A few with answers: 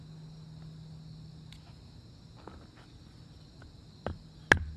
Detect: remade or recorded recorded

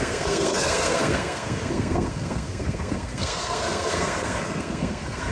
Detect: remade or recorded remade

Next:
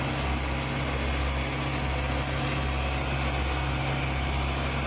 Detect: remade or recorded recorded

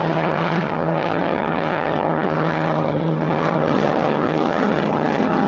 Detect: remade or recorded remade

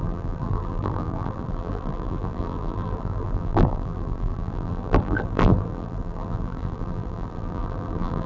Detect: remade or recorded remade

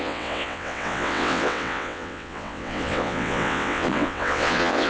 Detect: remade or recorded remade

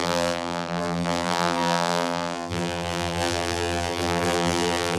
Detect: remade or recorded remade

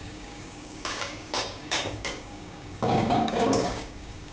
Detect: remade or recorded remade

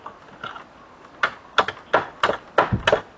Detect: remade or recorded recorded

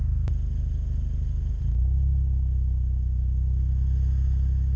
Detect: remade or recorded recorded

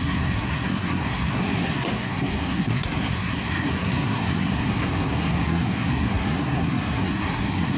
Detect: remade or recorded remade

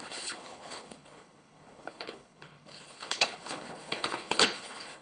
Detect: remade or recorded remade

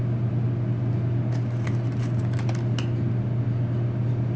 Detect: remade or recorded recorded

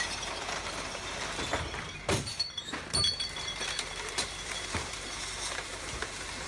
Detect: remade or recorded remade